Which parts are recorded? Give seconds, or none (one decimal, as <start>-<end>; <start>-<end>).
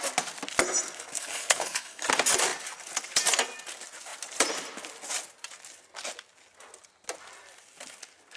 0.0-1.1; 2.1-8.4